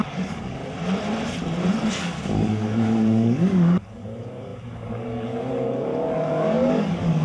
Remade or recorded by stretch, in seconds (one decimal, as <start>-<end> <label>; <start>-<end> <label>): 0.0-0.6 remade; 0.6-1.9 recorded; 1.9-7.2 remade